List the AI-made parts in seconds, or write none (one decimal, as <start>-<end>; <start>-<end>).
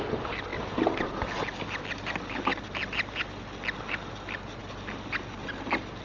none